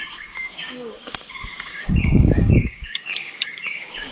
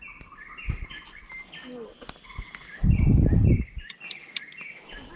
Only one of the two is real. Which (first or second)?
second